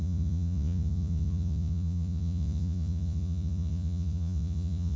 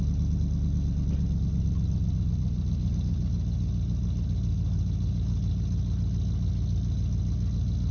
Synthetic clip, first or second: first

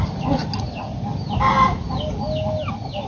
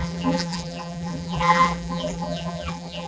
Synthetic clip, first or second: second